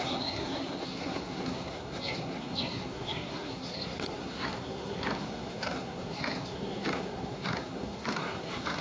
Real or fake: fake